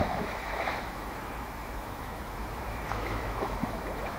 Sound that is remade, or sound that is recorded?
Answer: remade